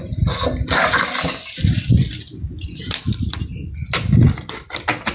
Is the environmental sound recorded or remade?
recorded